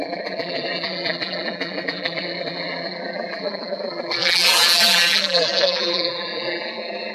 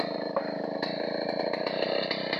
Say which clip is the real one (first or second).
second